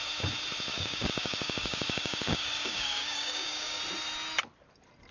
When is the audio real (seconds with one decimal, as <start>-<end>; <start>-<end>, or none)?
0.0-0.7; 3.8-5.1